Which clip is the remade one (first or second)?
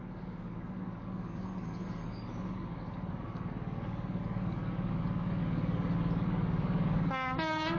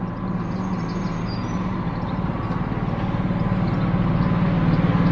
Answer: first